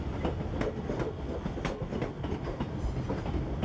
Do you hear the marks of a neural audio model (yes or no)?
no